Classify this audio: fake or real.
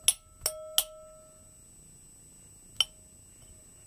real